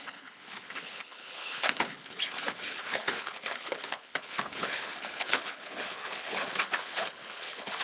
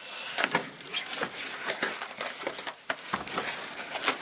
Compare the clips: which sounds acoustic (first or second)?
second